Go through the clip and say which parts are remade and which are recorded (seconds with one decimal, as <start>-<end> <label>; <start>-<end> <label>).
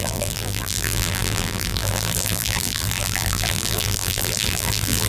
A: 0.0-5.1 remade